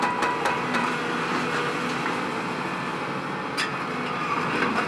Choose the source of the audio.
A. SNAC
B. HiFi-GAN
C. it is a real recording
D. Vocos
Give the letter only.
C